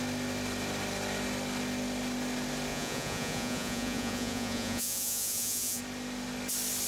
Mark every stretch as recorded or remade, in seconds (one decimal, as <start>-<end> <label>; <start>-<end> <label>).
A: 0.0-2.7 recorded; 2.7-5.8 remade; 5.8-6.9 recorded